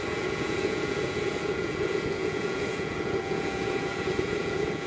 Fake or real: fake